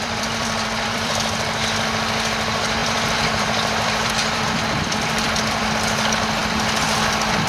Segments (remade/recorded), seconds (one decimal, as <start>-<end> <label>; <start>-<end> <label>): 0.0-1.1 remade; 1.1-2.8 recorded; 2.8-5.7 remade; 5.7-7.5 recorded